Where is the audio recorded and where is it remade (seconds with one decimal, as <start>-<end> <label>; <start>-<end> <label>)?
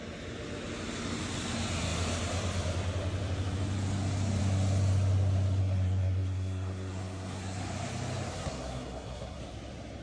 0.0-5.6 recorded; 5.6-7.6 remade; 7.6-8.3 recorded; 8.3-9.4 remade; 9.4-10.0 recorded